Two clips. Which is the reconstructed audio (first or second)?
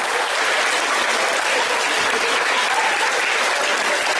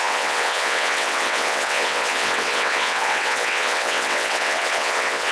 second